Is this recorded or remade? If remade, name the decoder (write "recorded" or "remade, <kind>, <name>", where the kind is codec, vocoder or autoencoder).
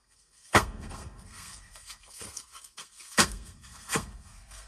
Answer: remade, codec, SNAC